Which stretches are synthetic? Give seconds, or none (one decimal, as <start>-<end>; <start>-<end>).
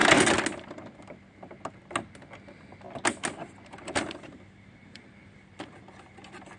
3.4-6.6